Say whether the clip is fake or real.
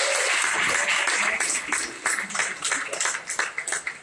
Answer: real